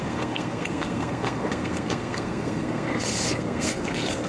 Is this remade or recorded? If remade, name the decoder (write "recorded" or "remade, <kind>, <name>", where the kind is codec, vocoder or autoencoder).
remade, codec, SNAC